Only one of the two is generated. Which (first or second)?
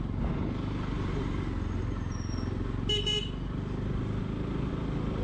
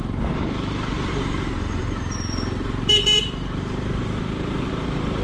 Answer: second